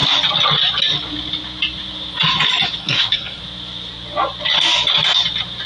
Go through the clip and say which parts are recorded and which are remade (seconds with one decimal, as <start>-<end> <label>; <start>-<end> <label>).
0.0-2.8 recorded; 2.8-3.4 remade; 3.4-5.7 recorded